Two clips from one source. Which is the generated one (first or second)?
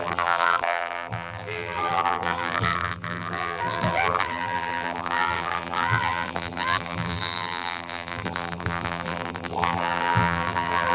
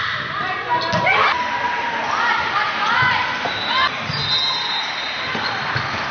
first